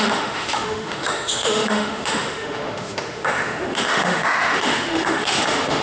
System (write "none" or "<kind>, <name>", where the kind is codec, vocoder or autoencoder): autoencoder, DAC-VAE